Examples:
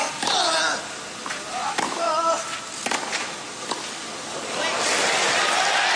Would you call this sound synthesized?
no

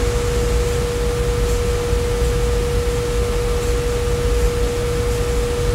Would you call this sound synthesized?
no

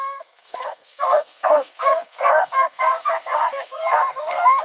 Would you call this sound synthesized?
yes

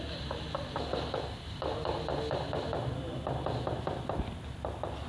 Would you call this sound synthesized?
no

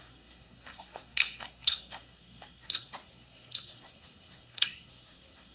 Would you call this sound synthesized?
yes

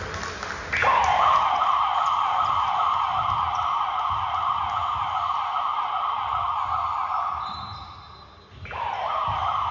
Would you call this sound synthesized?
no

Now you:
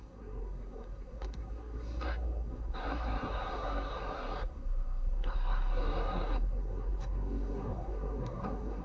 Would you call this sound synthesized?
yes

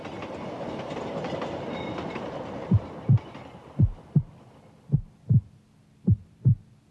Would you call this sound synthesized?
no